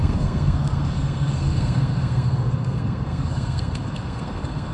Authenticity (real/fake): fake